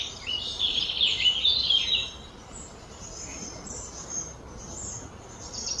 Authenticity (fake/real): real